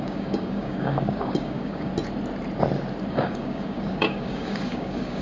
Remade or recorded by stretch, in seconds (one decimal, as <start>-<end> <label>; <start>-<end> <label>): 0.0-1.9 remade; 1.9-3.1 recorded; 3.1-5.2 remade